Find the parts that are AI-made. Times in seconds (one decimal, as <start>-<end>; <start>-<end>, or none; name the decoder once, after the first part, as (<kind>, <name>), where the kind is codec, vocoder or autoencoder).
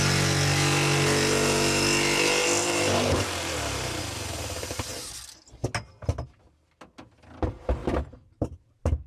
2.6-4.0 (vocoder, BigVGAN v2); 7.8-8.7